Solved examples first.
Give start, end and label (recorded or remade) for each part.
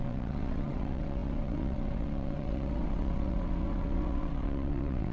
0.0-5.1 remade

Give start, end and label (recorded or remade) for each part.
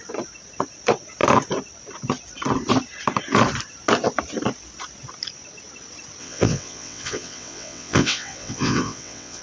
0.0-6.2 recorded; 6.2-9.4 remade